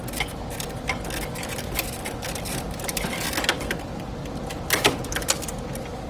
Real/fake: fake